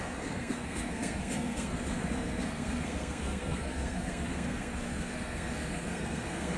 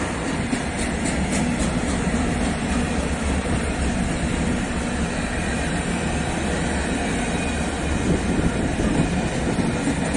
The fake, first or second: first